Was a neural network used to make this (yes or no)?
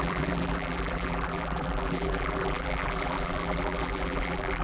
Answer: yes